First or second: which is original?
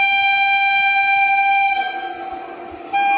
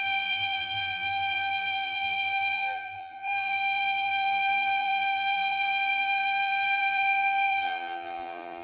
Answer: first